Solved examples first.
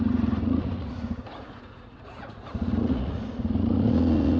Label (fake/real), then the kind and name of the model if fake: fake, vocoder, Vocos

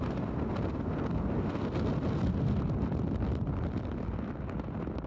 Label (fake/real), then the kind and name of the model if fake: real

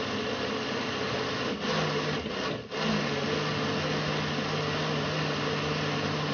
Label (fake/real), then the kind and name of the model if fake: real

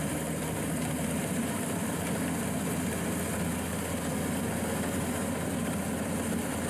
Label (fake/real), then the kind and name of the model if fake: real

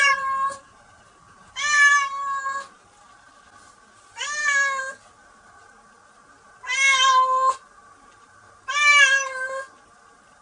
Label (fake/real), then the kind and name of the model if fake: real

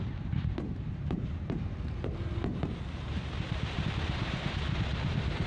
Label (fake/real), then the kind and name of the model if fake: fake, vocoder, BigVGAN v2